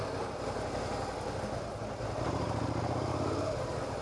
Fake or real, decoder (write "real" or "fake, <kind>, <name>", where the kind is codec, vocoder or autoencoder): real